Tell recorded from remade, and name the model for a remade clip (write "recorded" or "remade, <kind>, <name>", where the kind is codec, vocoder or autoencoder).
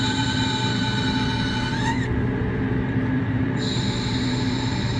remade, vocoder, BigVGAN v2